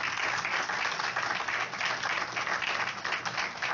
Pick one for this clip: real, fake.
real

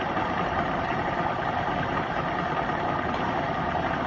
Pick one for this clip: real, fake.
real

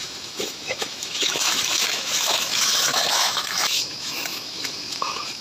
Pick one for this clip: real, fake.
fake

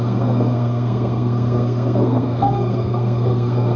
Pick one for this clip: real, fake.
fake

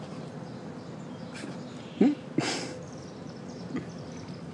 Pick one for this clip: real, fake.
real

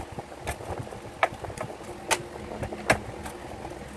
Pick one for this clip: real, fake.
real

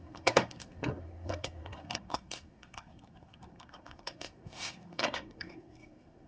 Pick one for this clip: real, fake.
fake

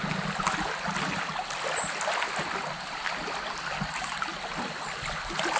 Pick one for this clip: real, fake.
real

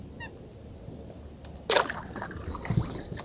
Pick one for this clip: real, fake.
real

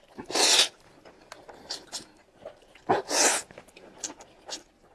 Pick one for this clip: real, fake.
real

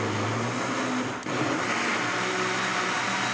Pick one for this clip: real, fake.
real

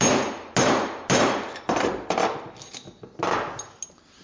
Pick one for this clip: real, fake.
real